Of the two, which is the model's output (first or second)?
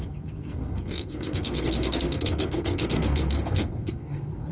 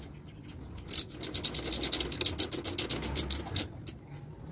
first